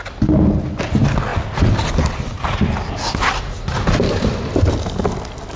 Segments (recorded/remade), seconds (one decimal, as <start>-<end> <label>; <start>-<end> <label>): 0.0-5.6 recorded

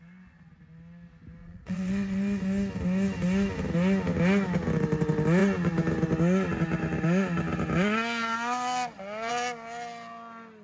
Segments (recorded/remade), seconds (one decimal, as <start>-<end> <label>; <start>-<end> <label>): 0.0-1.4 recorded; 1.4-2.4 remade; 2.4-10.6 recorded

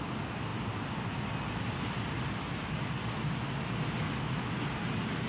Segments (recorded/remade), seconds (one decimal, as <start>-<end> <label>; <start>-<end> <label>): 0.0-5.3 recorded